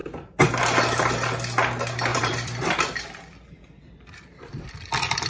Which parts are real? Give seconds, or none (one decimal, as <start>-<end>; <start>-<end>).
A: 0.0-2.1